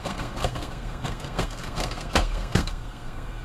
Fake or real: fake